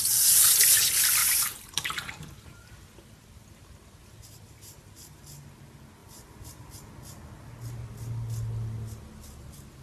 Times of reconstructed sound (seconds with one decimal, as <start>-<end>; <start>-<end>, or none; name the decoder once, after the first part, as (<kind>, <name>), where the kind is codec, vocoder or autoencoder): 1.2-2.7 (vocoder, BigVGAN v2); 6.0-6.7

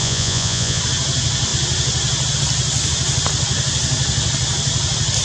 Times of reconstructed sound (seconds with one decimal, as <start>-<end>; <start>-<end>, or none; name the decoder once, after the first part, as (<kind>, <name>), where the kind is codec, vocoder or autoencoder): 0.0-0.8 (vocoder, Vocos)

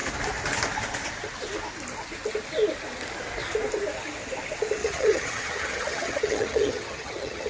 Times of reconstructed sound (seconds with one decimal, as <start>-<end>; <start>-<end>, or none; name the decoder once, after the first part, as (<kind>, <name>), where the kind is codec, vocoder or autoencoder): 4.8-7.5 (vocoder, HiFi-GAN)